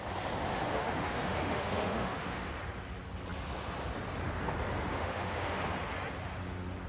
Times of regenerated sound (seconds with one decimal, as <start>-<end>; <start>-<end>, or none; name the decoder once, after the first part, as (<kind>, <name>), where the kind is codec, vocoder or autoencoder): 0.5-2.5 (autoencoder, DAC-VAE); 4.9-5.6

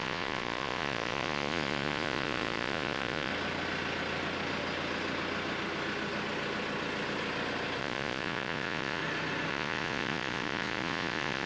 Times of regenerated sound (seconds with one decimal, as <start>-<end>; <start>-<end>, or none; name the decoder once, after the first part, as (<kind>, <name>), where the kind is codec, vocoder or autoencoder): 0.0-3.3 (vocoder, Vocos); 7.8-9.0; 9.5-11.5